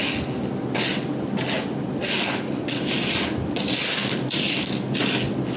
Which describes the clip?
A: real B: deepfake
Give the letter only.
A